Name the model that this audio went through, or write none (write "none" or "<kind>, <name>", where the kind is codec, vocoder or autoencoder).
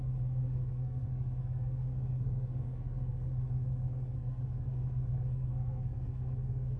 codec, SNAC